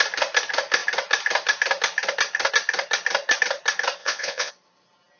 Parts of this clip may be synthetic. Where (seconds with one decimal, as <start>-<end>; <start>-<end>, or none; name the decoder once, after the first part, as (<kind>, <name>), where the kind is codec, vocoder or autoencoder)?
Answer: 4.0-4.5 (vocoder, Vocos)